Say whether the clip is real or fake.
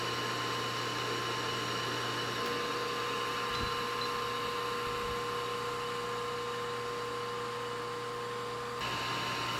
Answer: real